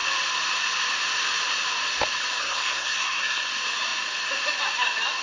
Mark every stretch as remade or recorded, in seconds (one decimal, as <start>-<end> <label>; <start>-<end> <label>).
0.0-2.4 recorded; 2.4-3.5 remade; 3.5-5.2 recorded

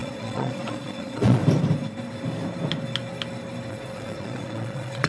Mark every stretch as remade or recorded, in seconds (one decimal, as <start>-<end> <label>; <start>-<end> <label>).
0.0-1.4 remade; 1.4-3.7 recorded; 3.7-5.1 remade